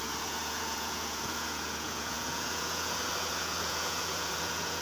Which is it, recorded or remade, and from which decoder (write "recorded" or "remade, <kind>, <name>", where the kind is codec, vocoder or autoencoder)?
remade, vocoder, Vocos